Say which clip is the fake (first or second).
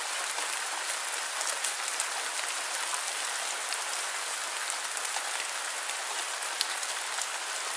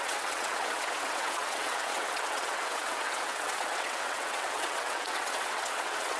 second